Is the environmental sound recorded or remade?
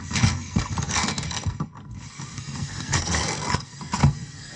remade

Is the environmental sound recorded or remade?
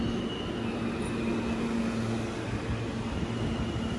recorded